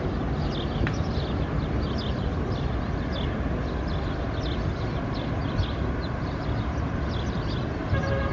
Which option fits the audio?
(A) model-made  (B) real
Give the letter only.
B